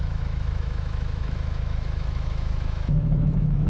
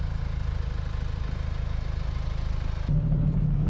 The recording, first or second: second